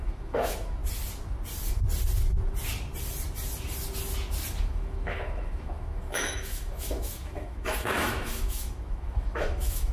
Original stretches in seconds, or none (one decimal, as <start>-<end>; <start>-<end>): 0.8-4.6